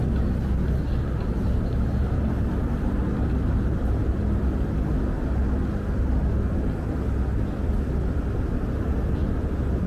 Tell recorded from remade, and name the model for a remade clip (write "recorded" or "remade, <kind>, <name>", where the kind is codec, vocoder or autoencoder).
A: recorded